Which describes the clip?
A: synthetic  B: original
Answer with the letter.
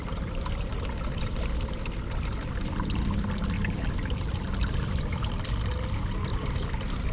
B